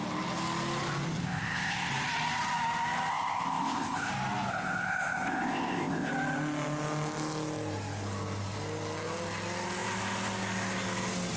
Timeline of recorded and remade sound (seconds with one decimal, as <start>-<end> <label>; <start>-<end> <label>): 0.0-1.2 recorded; 1.2-1.9 remade; 1.9-3.1 recorded; 3.1-4.1 remade; 4.1-4.5 recorded; 4.5-6.1 remade; 6.1-11.4 recorded